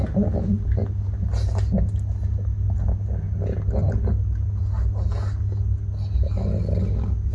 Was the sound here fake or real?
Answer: real